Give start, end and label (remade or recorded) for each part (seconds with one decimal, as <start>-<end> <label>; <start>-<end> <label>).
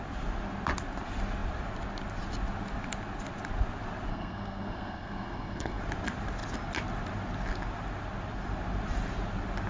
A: 0.0-4.1 recorded; 4.1-5.8 remade; 5.8-9.7 recorded